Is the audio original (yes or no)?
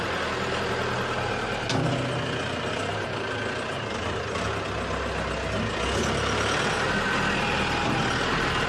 yes